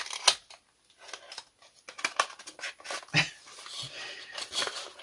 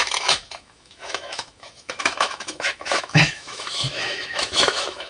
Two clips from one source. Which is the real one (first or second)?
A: first